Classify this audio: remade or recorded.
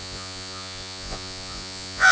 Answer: remade